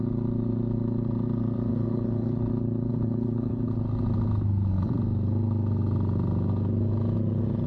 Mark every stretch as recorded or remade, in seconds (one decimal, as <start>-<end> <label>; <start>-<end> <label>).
0.0-1.7 recorded; 1.7-2.5 remade; 2.5-2.9 recorded; 2.9-3.7 remade; 3.7-7.7 recorded